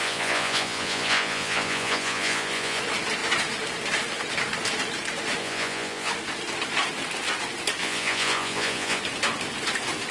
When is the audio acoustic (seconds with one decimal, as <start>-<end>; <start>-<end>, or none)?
2.8-5.4; 6.1-7.8; 9.0-10.1